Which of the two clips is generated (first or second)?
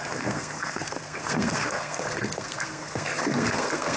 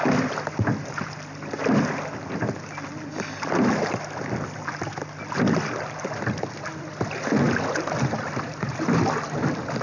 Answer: first